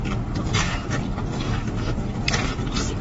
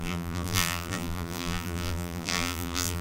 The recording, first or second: first